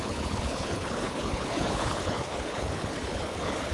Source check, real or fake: fake